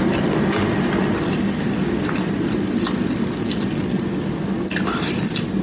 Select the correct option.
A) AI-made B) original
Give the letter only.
B